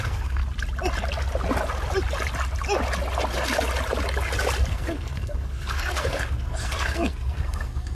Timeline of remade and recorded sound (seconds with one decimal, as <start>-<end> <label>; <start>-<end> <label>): 0.0-0.4 remade; 0.4-4.7 recorded; 4.7-7.9 remade